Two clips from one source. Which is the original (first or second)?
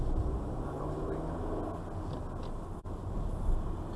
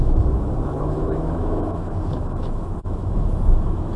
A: first